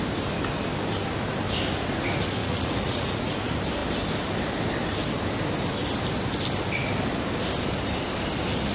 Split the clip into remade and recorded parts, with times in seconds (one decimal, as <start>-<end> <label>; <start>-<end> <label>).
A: 0.0-2.4 recorded; 2.4-3.2 remade; 3.2-8.7 recorded